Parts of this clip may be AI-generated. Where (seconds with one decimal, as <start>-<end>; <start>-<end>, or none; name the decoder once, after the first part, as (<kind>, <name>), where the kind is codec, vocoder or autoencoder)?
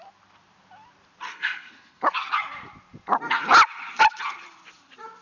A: 1.3-2.0 (codec, SNAC)